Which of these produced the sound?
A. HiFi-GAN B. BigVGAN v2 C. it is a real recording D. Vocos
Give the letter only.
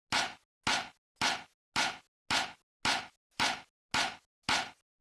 C